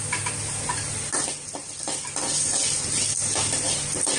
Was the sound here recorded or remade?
recorded